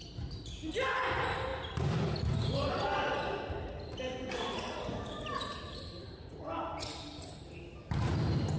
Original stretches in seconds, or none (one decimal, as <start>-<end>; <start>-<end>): 0.0-8.6